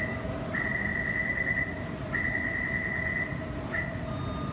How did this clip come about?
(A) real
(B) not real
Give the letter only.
A